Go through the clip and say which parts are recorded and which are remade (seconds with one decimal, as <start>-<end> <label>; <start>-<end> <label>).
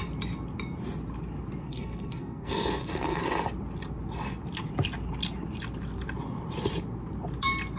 0.0-1.6 recorded; 1.6-3.2 remade; 3.2-7.8 recorded